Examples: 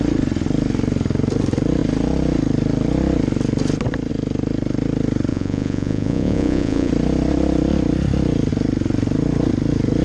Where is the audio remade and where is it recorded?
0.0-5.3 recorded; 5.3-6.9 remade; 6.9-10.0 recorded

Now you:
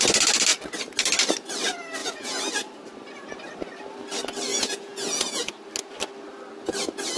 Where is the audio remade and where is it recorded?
0.0-2.0 recorded; 2.0-2.5 remade; 2.5-4.5 recorded; 4.5-5.5 remade; 5.5-7.2 recorded